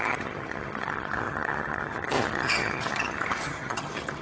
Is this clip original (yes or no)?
no